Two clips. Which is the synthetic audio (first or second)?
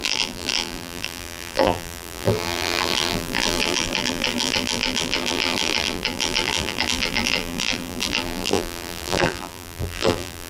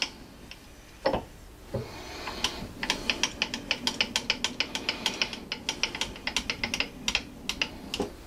first